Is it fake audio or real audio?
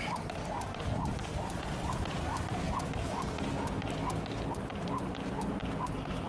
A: real